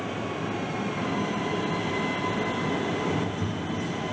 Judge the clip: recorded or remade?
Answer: recorded